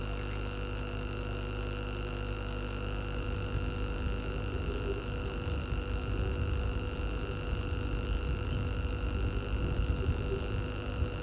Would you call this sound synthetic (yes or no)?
yes